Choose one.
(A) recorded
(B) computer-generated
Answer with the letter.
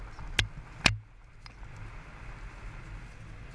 A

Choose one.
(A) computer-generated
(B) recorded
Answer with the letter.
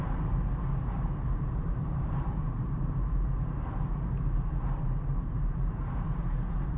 A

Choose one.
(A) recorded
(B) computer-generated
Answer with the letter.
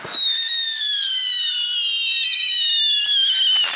A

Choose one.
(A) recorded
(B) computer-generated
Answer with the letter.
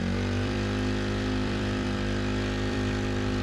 B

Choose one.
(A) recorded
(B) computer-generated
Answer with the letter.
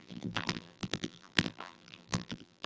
B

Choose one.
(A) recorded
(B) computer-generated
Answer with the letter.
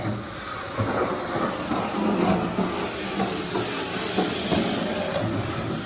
A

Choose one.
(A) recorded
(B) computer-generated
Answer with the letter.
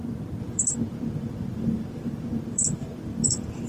B